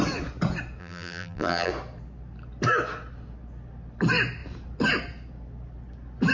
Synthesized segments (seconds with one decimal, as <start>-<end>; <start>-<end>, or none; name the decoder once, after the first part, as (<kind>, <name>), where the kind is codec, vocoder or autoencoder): 0.8-1.7 (vocoder, BigVGAN v2)